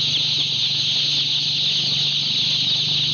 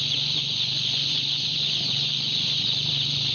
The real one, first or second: first